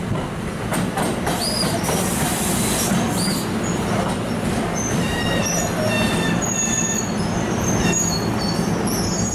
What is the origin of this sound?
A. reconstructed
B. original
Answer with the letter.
B